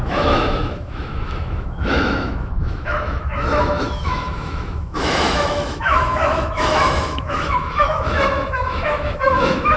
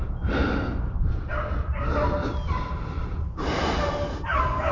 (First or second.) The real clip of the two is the second